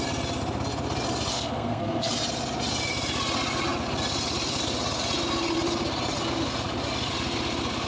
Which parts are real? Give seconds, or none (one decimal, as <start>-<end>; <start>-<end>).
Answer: 0.0-1.3; 2.1-7.9